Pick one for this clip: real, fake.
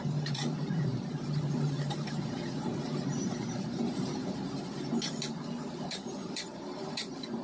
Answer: fake